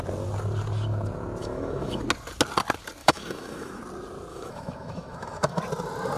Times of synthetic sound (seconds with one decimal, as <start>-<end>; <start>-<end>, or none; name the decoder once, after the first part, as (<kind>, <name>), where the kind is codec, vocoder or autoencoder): 1.4-2.0 (autoencoder, DAC-VAE); 3.0-3.8; 4.3-5.6